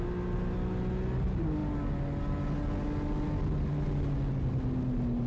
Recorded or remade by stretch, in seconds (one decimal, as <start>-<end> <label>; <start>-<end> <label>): 0.0-5.3 recorded